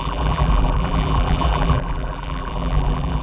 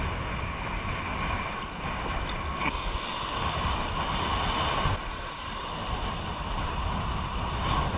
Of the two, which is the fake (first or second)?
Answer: first